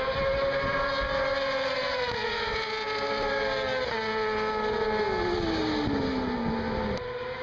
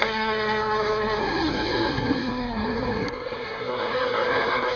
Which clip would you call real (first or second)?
first